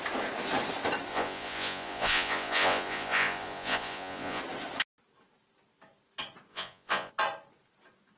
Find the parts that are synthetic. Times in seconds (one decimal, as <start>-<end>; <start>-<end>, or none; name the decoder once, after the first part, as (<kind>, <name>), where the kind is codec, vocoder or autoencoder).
1.1-4.4 (vocoder, Vocos); 6.5-7.1